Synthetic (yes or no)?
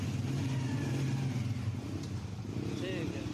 no